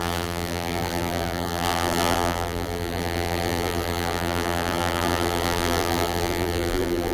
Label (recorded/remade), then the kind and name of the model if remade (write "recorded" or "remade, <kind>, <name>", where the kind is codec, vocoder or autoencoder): remade, vocoder, BigVGAN v2